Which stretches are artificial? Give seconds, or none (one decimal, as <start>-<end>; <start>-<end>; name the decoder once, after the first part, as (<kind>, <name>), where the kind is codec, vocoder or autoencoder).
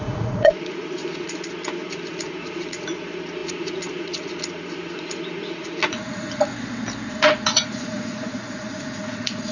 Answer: 0.0-6.5 (vocoder, Vocos); 7.1-9.5